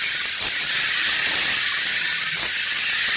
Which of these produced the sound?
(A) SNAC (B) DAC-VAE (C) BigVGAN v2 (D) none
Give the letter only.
D